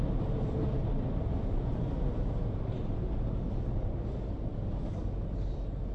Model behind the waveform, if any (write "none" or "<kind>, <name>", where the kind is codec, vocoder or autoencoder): none